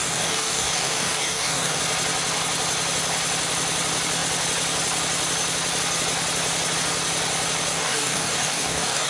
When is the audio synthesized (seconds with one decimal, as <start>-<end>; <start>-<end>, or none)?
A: 0.0-1.8; 7.7-9.1